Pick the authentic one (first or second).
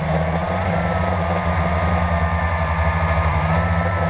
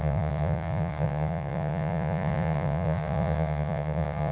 first